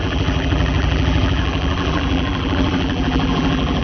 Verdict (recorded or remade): remade